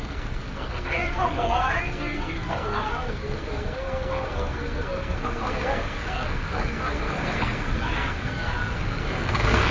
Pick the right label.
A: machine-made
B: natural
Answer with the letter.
A